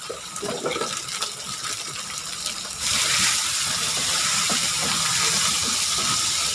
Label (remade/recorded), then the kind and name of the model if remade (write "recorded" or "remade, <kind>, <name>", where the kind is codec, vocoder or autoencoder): remade, vocoder, BigVGAN v2